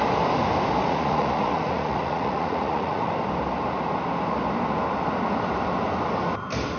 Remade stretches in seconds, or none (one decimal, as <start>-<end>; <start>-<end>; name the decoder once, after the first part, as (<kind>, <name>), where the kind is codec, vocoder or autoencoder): 0.8-3.1 (vocoder, Vocos)